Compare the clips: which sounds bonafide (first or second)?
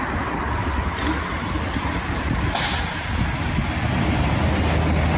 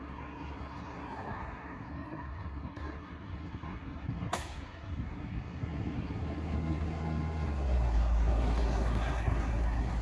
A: first